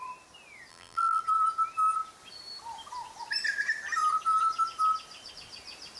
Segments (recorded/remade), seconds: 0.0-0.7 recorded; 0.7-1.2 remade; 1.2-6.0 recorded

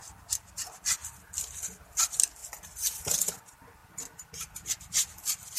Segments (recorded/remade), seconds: 0.0-5.6 recorded

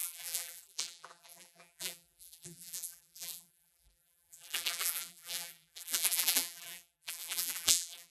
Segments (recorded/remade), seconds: 0.0-8.1 remade

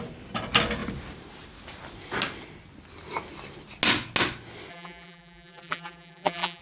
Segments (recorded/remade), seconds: 0.0-4.7 recorded; 4.7-6.6 remade

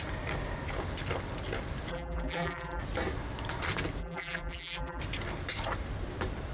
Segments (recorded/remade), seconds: 0.0-1.9 recorded; 1.9-2.8 remade; 2.8-4.0 recorded; 4.0-5.0 remade; 5.0-6.5 recorded

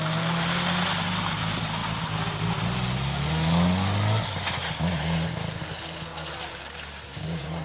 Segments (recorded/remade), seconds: 0.0-7.6 recorded

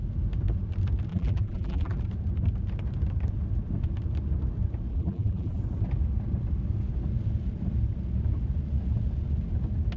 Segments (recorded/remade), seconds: 0.0-1.1 recorded; 1.1-2.0 remade; 2.0-4.9 recorded; 4.9-5.6 remade; 5.6-10.0 recorded